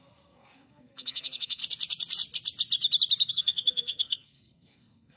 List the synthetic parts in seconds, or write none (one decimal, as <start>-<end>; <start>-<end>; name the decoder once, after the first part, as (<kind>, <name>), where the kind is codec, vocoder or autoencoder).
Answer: 0.0-1.6 (codec, SNAC); 3.3-5.2